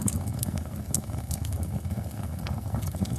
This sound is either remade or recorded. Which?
remade